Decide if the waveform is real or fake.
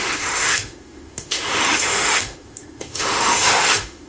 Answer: fake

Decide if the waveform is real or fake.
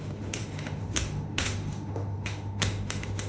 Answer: fake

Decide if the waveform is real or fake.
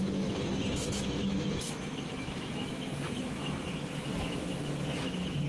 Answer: fake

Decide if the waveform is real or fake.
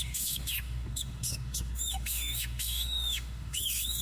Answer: fake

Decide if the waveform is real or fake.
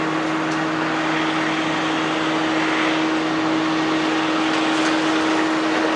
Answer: real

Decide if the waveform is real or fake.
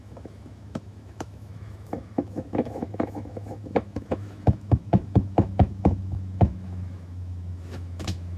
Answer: fake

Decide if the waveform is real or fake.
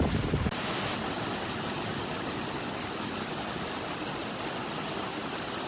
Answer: real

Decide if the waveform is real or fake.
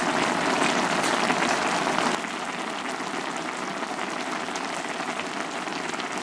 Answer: real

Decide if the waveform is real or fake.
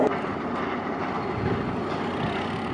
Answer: real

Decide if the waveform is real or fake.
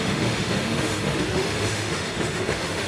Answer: fake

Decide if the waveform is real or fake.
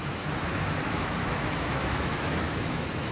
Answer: fake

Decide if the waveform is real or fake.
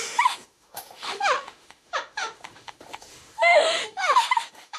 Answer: fake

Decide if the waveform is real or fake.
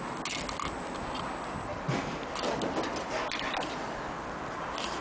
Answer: real